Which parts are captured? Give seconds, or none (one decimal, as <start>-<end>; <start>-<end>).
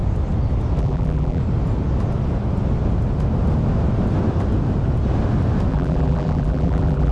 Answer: 0.0-0.8; 1.4-5.7